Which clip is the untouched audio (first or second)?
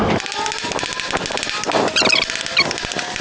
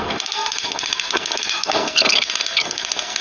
first